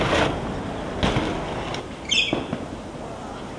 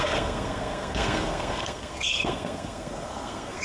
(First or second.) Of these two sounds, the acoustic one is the first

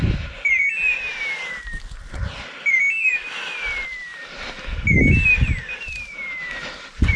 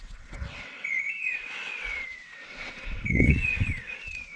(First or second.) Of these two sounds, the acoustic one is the first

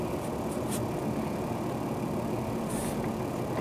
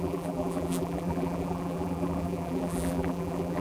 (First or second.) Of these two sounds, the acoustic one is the first